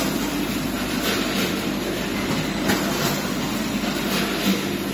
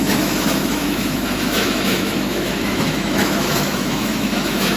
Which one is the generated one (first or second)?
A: second